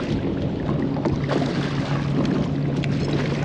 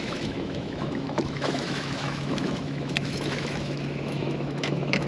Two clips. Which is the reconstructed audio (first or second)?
second